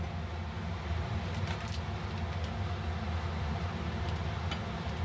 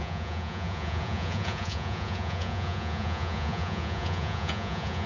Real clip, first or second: first